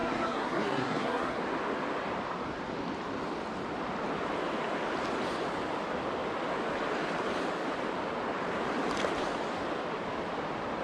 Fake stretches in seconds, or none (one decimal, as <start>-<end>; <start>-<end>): 0.0-1.4